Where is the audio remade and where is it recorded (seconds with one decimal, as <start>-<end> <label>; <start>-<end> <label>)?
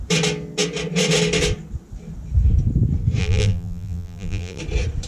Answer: 0.0-3.2 recorded; 3.2-4.6 remade; 4.6-5.1 recorded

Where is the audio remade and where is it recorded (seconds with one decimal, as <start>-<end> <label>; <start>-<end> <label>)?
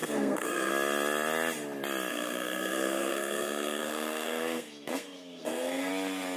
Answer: 0.0-0.7 remade; 0.7-2.1 recorded; 2.1-5.9 remade; 5.9-6.4 recorded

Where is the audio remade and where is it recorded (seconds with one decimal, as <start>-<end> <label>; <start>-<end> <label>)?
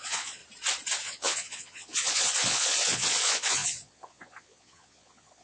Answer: 0.0-0.4 remade; 0.4-1.0 recorded; 1.0-5.4 remade